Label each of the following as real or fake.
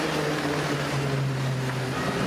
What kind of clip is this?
real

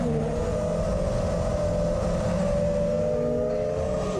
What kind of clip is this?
real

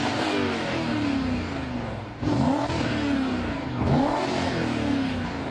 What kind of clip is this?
fake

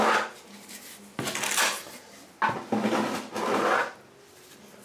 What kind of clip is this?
real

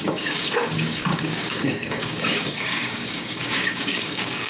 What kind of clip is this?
fake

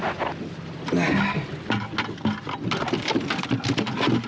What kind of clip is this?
real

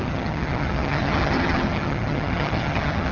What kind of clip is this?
fake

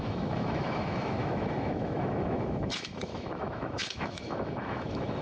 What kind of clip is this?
fake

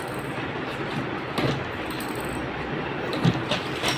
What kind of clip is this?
real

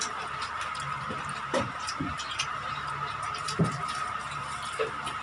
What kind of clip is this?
fake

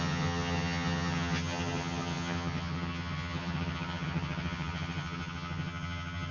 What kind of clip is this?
fake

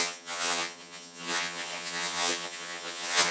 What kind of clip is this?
fake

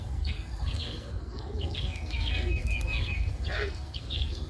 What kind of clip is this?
fake